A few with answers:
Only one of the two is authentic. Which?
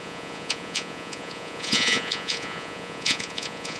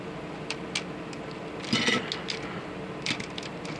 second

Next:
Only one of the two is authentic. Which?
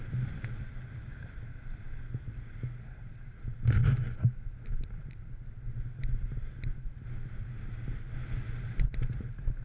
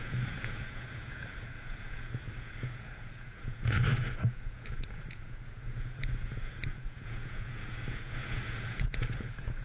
first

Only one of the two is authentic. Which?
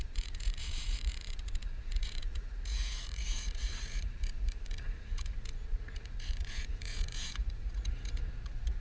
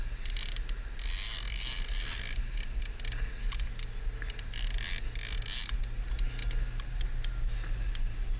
second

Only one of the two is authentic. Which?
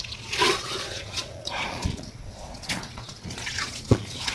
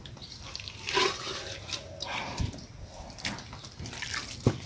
second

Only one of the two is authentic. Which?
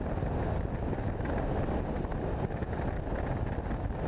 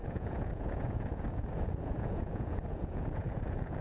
first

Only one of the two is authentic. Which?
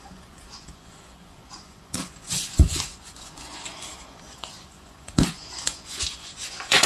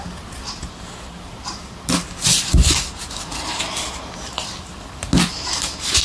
second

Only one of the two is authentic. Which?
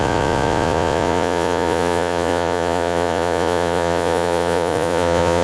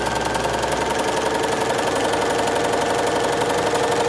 second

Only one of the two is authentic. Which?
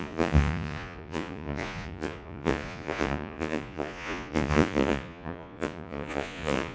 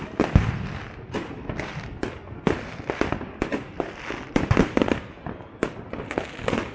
second